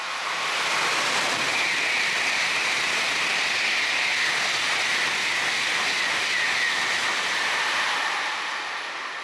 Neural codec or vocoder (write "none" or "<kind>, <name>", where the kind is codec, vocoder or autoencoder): none